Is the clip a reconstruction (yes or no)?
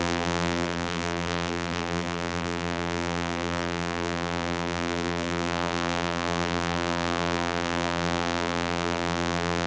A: yes